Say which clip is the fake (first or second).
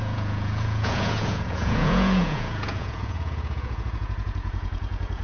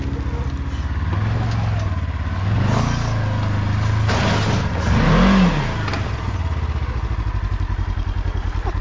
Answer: first